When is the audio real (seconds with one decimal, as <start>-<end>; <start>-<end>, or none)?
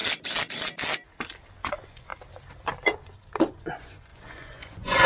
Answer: 0.0-1.7; 2.1-3.5